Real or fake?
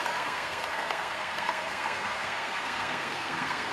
fake